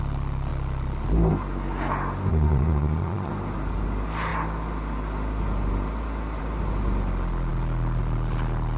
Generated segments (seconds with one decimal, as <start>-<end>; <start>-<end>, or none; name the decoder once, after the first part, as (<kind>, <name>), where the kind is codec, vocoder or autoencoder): 2.3-3.3 (vocoder, Vocos)